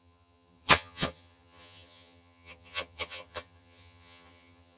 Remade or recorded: remade